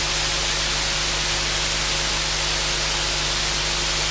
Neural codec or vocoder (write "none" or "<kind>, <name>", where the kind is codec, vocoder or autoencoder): none